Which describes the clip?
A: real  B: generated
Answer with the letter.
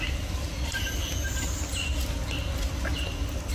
A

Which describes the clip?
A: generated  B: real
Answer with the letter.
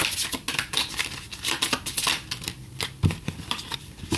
B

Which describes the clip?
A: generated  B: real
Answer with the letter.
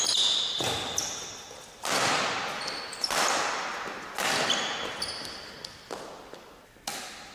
B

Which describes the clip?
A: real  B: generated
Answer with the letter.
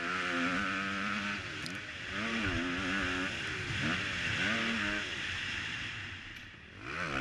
A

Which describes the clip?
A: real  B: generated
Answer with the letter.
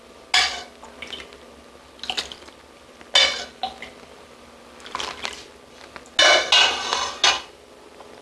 A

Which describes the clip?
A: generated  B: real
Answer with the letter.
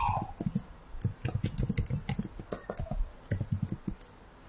B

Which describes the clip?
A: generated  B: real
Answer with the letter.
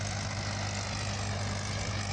B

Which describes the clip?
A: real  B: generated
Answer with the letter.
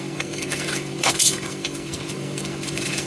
B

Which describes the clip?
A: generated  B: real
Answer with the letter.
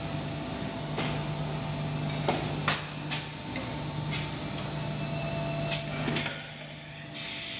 B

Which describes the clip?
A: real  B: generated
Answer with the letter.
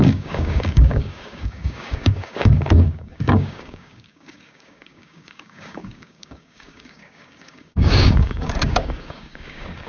B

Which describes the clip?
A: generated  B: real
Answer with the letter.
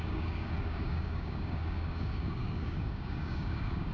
A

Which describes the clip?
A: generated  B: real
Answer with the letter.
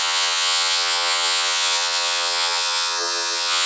A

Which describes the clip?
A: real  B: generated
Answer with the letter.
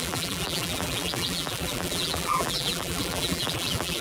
B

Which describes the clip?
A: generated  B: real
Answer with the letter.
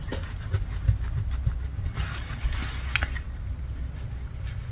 B